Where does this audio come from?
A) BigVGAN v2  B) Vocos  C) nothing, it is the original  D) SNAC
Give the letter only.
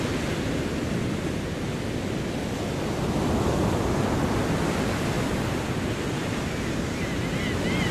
C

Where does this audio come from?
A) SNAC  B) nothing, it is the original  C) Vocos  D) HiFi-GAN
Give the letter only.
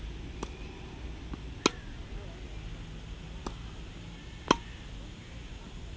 B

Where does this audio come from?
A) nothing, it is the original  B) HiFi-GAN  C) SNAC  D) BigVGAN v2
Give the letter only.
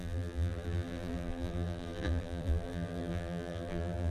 D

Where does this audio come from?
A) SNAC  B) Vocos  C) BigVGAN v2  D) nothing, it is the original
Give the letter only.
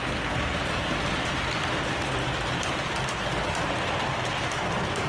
D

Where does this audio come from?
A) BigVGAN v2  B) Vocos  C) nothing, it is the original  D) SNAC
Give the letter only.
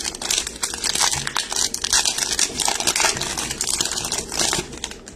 C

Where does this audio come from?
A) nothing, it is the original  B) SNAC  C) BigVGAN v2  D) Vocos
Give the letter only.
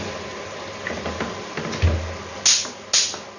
A